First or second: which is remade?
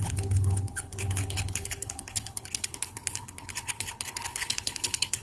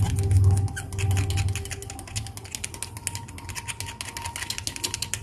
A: first